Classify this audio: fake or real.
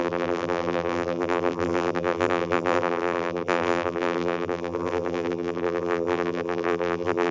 fake